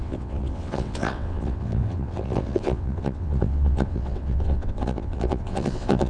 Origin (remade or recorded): remade